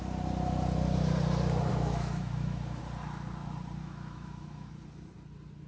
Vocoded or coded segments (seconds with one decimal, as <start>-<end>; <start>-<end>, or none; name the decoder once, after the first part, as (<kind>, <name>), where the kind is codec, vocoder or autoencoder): 1.7-2.8 (autoencoder, DAC-VAE); 3.8-4.7